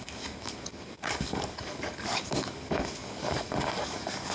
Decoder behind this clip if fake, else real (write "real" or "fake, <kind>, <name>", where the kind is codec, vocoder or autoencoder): fake, codec, DAC